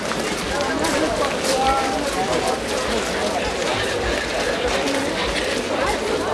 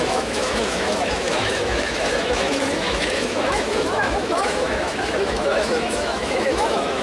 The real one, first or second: first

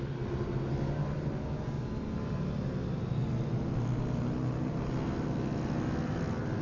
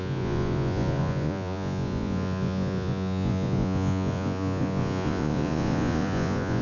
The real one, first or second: first